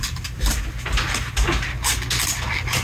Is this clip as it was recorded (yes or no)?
yes